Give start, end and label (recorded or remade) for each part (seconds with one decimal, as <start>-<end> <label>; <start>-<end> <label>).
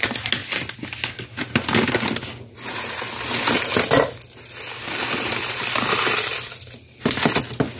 0.0-7.8 recorded